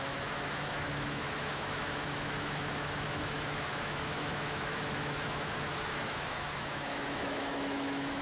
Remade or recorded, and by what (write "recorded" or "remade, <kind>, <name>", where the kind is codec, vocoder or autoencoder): remade, autoencoder, DAC-VAE